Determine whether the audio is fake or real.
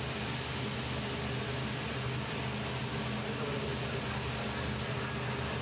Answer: real